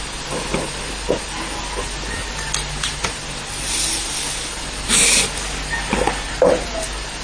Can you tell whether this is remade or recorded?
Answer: recorded